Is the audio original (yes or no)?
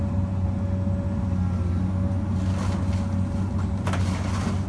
yes